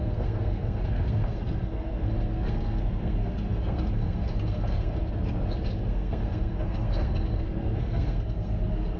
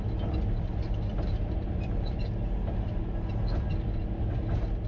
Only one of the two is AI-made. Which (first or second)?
first